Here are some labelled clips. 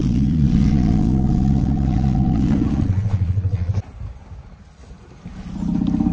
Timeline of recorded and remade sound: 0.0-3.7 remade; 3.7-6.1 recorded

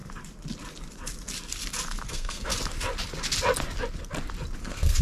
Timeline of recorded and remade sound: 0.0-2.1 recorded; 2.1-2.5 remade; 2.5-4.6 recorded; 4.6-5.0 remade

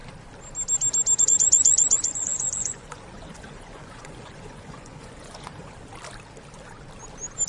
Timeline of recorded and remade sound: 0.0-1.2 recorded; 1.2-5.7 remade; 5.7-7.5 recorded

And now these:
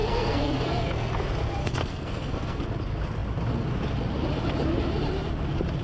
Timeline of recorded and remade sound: 0.0-1.1 remade; 1.1-1.6 recorded; 1.6-2.6 remade; 2.6-5.8 recorded

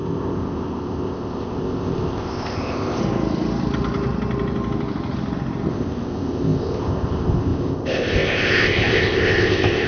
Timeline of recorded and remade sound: 0.0-3.0 remade; 3.0-5.7 recorded; 5.7-9.9 remade